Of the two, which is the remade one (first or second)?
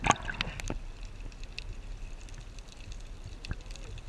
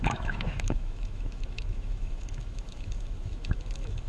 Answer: second